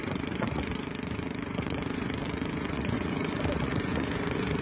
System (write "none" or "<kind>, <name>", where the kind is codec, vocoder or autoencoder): vocoder, Vocos